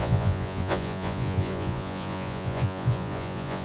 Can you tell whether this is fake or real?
fake